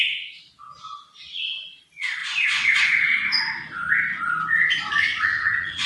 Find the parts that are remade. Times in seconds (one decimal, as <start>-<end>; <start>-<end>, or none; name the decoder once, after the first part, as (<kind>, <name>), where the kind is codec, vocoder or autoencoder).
0.0-0.4 (vocoder, Vocos); 1.8-3.2; 5.0-5.9